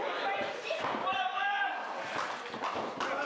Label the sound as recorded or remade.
remade